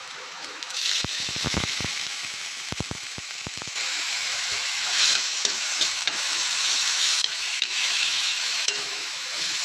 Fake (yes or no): yes